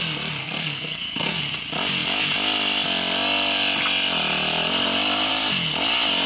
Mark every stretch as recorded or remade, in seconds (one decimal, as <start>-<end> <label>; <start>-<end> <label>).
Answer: 0.0-0.4 recorded; 0.4-1.4 remade; 1.4-6.3 recorded

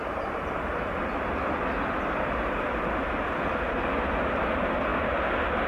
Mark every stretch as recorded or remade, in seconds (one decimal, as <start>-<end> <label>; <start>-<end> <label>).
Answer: 0.0-5.7 recorded

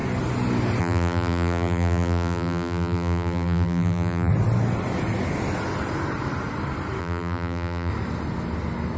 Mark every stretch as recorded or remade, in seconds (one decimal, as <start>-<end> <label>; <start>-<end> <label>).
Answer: 0.0-0.8 recorded; 0.8-4.3 remade; 4.3-7.0 recorded; 7.0-7.9 remade; 7.9-9.0 recorded

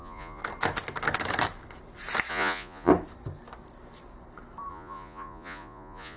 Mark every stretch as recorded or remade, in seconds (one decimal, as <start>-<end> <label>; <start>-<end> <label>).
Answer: 0.0-0.4 remade; 0.4-2.3 recorded; 2.3-2.9 remade; 2.9-4.7 recorded; 4.7-6.2 remade

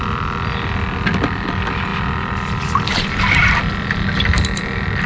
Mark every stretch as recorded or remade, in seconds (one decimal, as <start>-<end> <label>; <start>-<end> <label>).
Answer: 0.0-5.1 recorded

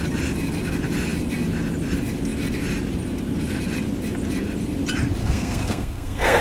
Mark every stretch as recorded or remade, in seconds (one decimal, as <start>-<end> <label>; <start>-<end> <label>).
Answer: 0.0-5.2 recorded; 5.2-6.4 remade